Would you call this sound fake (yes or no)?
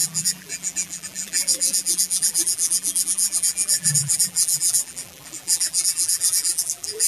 yes